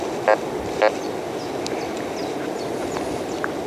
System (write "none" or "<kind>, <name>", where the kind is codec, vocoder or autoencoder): none